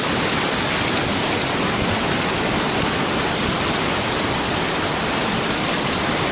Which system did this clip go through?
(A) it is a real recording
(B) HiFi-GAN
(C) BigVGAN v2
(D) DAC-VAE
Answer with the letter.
A